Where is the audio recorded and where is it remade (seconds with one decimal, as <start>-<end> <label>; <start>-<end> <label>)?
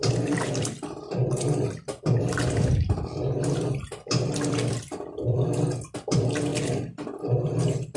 0.0-8.0 remade